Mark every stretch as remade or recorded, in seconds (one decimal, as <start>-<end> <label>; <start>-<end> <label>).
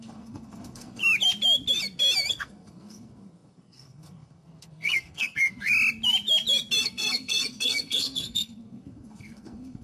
0.0-1.0 remade; 1.0-2.3 recorded; 2.3-5.7 remade; 5.7-6.8 recorded; 6.8-9.8 remade